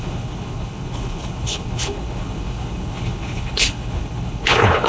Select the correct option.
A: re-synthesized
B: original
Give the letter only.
A